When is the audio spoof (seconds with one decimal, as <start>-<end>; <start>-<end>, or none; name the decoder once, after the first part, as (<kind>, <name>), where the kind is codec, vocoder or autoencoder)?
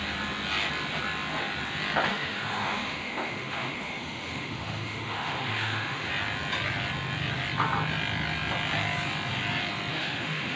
2.1-6.1 (autoencoder, DAC-VAE); 9.9-10.6